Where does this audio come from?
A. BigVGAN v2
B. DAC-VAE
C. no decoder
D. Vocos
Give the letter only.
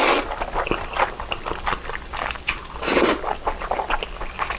C